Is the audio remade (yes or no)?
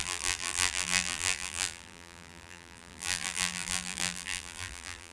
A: yes